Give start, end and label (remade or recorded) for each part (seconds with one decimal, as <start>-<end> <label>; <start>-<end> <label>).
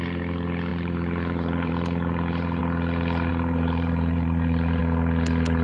0.0-0.7 recorded; 0.7-2.6 remade; 2.6-3.3 recorded; 3.3-4.8 remade; 4.8-5.6 recorded